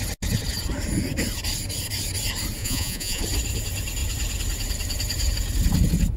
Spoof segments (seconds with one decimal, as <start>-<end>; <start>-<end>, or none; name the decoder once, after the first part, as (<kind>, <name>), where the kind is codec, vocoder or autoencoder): 2.6-3.2 (vocoder, Vocos)